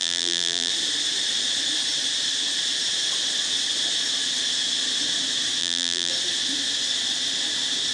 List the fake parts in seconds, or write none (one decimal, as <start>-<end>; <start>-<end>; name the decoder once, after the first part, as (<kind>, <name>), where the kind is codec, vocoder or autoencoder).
0.0-0.7 (vocoder, BigVGAN v2); 5.6-6.1